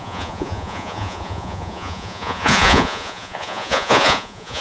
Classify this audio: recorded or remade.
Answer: remade